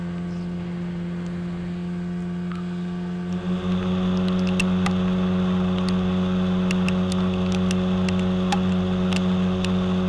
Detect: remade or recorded recorded